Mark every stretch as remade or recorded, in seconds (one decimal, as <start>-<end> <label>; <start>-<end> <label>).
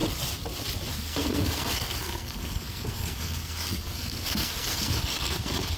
0.0-0.9 recorded; 0.9-5.8 remade